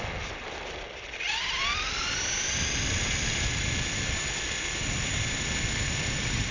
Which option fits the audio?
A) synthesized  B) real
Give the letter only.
B